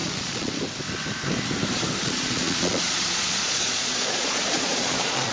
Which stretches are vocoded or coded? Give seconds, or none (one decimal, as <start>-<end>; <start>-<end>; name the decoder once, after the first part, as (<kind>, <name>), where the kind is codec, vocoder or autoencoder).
0.0-0.5 (vocoder, Vocos); 2.0-5.3